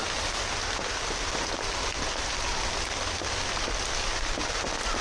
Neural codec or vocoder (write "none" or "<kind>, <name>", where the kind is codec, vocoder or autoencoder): none